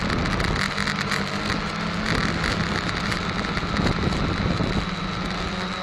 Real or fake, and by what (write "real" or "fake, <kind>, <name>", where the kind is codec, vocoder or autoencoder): real